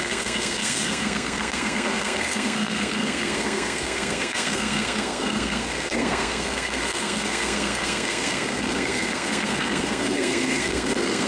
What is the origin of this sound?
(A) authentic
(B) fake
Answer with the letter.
B